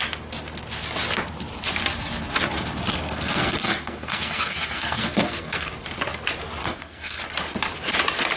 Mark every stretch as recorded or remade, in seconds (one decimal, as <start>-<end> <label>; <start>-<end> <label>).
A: 0.0-2.9 recorded; 2.9-5.7 remade; 5.7-6.6 recorded; 6.6-7.2 remade; 7.2-8.4 recorded